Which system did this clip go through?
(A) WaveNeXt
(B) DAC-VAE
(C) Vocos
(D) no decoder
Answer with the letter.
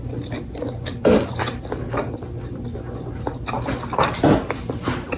D